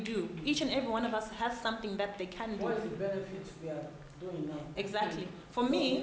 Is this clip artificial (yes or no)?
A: no